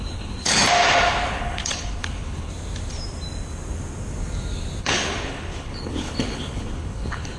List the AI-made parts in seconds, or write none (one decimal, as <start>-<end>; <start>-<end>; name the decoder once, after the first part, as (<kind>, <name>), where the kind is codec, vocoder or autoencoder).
0.0-0.6 (codec, HILCodec); 1.3-2.5; 4.8-7.4